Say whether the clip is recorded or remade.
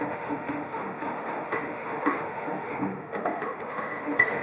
remade